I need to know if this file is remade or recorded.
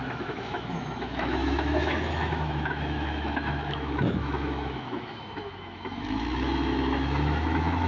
remade